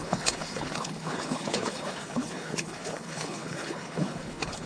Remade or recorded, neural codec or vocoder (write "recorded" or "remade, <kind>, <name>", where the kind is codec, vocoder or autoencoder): remade, codec, HILCodec